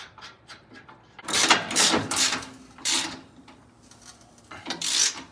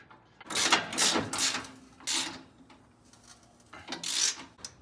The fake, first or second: first